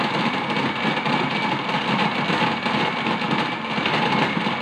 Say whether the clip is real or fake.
real